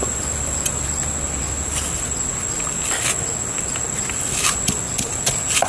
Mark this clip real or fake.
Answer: real